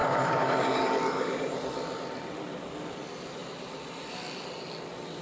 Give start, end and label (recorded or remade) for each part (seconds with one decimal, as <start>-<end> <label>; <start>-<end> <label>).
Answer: 0.0-1.5 remade; 1.5-5.2 recorded